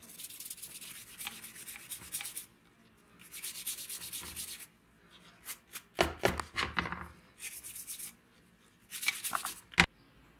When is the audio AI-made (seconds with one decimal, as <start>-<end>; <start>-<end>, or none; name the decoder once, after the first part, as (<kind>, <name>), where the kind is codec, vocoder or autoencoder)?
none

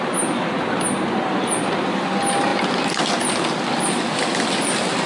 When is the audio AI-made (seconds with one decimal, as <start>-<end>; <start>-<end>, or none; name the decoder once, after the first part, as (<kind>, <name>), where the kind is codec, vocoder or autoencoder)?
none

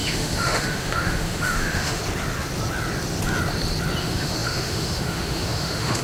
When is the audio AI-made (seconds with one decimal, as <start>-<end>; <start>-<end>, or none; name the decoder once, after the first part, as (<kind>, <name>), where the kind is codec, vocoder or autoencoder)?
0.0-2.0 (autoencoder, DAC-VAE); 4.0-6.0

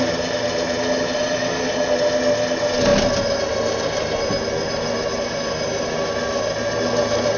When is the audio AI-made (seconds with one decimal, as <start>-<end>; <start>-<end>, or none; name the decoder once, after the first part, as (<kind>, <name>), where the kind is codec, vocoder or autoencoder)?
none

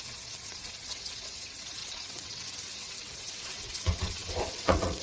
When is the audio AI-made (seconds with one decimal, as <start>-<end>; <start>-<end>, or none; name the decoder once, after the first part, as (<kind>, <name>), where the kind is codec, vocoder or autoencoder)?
0.0-5.0 (vocoder, WaveNeXt)